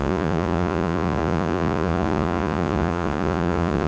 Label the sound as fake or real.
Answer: fake